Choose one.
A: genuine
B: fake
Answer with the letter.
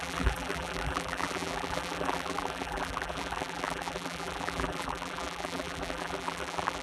B